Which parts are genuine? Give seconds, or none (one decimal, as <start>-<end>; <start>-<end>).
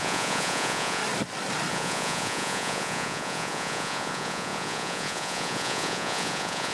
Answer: 1.0-1.7